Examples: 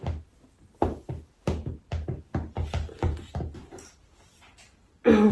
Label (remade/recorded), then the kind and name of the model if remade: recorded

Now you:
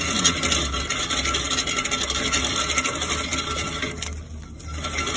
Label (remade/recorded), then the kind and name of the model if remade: recorded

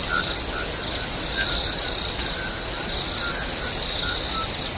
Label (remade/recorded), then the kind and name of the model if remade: recorded